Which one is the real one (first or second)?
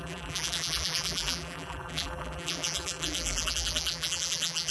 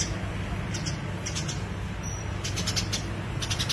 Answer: second